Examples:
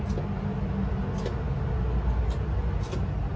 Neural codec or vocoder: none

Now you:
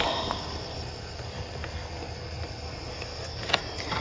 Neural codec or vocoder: none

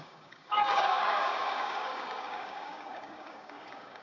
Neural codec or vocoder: codec, DAC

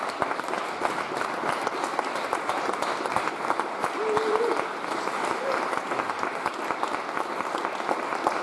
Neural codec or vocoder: none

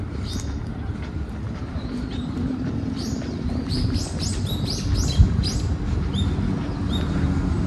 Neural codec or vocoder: none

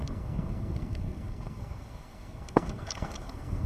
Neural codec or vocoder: codec, SNAC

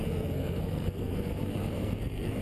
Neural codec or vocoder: codec, SNAC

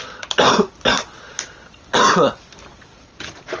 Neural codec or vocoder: none